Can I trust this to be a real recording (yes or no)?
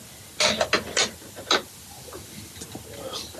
yes